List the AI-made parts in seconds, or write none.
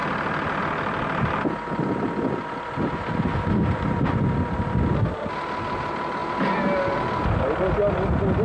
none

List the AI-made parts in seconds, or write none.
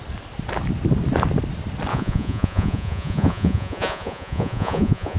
1.9-5.2 (vocoder, Vocos)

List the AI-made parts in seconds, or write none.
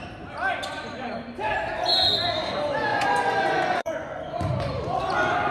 2.9-5.0 (vocoder, Vocos)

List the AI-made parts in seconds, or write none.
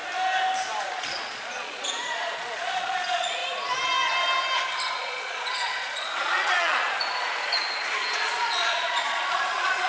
0.8-3.4 (vocoder, Vocos); 4.9-9.9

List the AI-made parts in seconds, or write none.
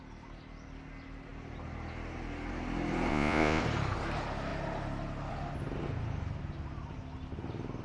3.1-3.6 (vocoder, Vocos)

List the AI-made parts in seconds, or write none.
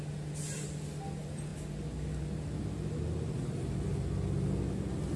none